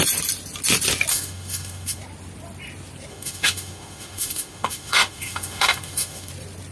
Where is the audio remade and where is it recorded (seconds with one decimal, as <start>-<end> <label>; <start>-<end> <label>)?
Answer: 0.0-1.1 recorded; 1.1-2.0 remade; 2.0-3.1 recorded; 3.1-6.3 remade; 6.3-6.7 recorded